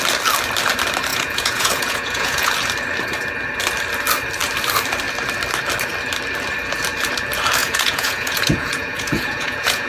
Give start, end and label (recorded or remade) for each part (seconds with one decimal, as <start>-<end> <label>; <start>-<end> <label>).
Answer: 0.0-1.1 recorded; 1.1-2.5 remade; 2.5-7.6 recorded; 7.6-9.9 remade